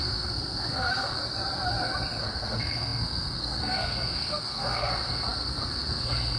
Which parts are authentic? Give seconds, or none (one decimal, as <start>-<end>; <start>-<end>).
1.2-2.2